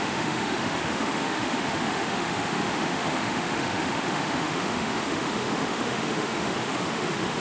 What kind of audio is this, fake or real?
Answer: fake